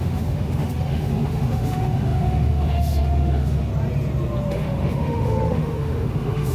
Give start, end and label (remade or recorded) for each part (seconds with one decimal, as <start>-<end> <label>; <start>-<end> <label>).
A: 0.0-3.7 remade; 3.7-4.5 recorded; 4.5-6.5 remade